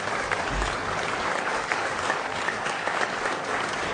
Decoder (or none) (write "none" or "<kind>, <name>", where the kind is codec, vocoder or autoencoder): codec, DAC